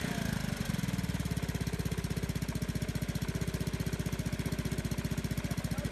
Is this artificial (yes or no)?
no